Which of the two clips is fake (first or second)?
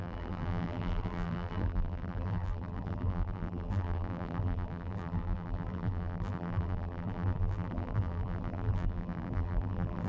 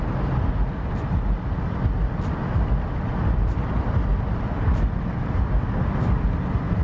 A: first